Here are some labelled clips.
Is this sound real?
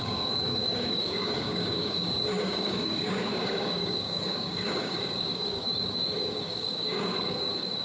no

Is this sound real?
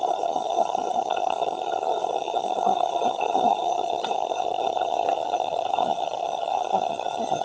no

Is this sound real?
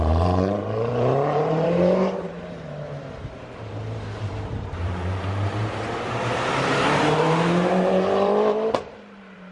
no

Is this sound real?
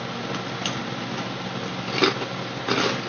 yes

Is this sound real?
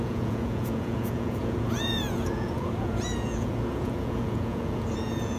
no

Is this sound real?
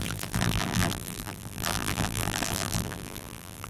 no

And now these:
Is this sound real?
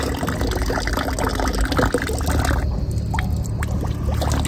yes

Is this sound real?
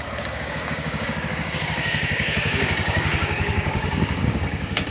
no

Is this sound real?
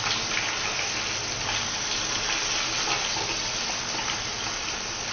yes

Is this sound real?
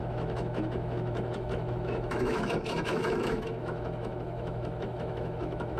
no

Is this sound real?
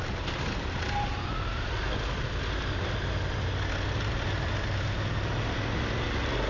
yes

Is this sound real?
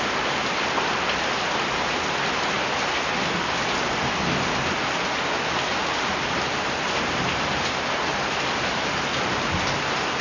yes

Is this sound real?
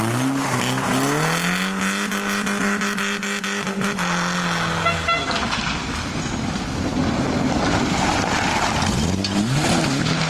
yes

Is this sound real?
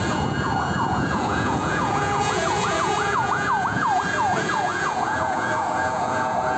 no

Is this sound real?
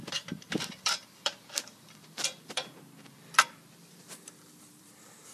no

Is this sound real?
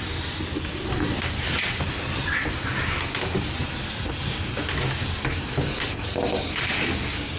yes